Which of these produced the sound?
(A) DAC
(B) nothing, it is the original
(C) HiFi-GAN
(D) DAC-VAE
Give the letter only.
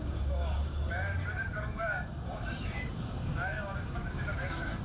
A